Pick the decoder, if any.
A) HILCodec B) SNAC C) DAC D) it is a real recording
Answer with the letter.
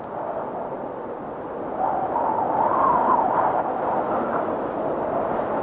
D